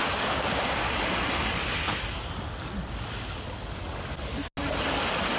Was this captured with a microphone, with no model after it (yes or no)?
yes